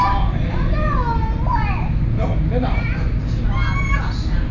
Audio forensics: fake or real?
real